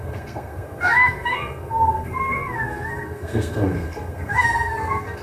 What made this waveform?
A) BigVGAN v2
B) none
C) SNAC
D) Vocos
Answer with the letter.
C